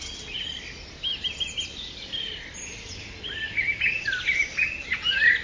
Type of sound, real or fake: real